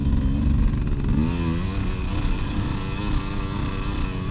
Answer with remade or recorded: recorded